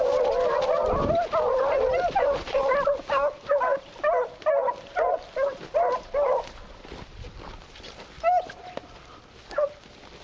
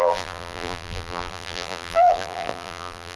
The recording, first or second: first